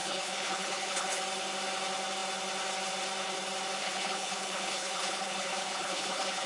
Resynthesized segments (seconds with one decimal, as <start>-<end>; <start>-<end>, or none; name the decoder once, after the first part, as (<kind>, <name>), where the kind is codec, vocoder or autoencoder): 0.0-1.2 (codec, HILCodec); 3.8-6.5

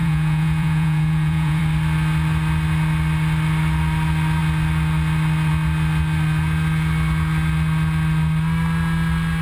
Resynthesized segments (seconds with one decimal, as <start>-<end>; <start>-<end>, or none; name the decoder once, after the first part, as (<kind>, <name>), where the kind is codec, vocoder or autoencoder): 0.0-1.6 (vocoder, Vocos)

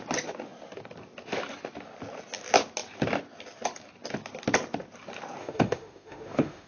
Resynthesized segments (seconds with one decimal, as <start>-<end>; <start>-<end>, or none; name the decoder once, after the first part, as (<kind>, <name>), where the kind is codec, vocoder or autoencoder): 5.4-6.7 (autoencoder, DAC-VAE)

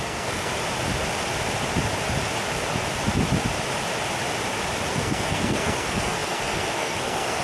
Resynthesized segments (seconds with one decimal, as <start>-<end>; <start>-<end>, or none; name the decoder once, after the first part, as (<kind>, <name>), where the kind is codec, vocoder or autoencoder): 0.0-0.5 (codec, SNAC); 4.9-7.4

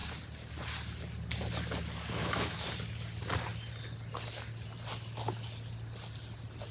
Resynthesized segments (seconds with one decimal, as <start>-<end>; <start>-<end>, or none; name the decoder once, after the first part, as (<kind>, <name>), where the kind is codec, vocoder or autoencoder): 2.2-2.7 (autoencoder, DAC-VAE)

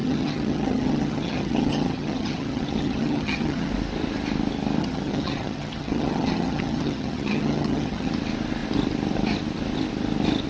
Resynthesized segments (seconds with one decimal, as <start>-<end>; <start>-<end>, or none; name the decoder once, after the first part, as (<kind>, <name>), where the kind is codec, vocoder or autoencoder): 0.0-3.7 (vocoder, HiFi-GAN); 4.8-8.1

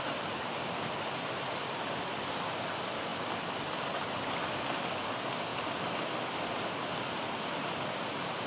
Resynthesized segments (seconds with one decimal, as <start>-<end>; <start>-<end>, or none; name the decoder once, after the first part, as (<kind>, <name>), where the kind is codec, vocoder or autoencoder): none

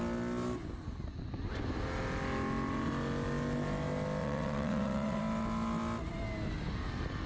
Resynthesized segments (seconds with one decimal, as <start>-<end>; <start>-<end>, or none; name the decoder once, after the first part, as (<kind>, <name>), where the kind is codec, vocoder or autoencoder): 4.2-5.2 (vocoder, WaveNeXt)